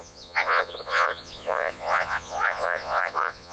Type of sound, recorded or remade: remade